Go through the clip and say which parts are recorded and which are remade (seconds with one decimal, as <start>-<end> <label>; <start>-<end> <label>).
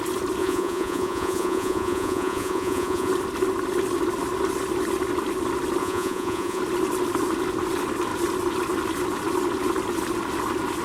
0.0-0.4 recorded; 0.4-3.1 remade; 3.1-5.8 recorded; 5.8-6.6 remade; 6.6-10.8 recorded